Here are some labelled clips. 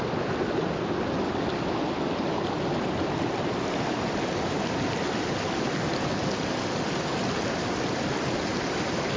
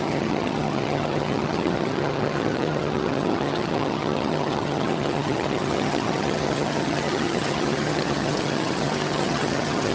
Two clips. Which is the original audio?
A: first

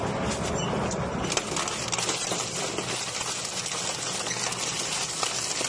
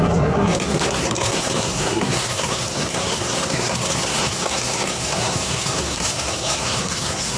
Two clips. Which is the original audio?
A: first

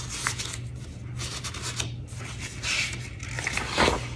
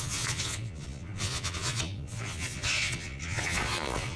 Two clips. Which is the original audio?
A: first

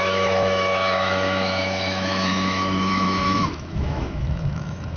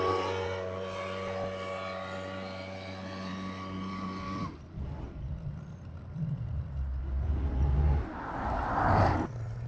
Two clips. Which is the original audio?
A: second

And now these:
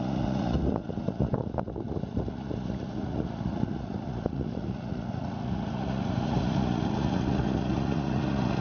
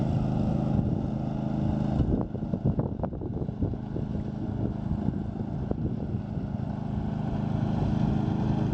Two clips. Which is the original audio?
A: second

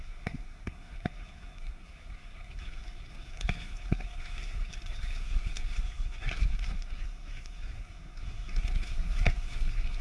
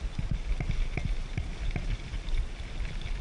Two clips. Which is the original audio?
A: second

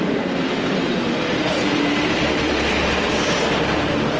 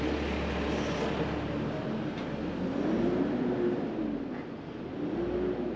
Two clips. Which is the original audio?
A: second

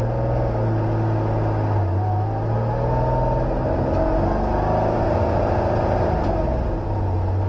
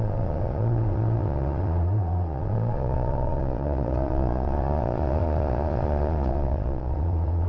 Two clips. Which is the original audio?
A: first